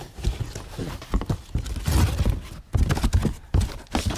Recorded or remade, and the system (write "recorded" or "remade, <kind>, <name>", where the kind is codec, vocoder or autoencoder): recorded